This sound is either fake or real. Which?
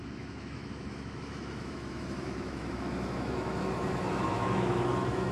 fake